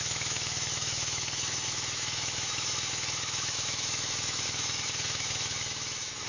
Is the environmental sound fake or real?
fake